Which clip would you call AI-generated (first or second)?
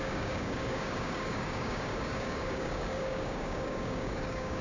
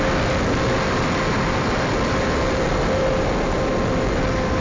first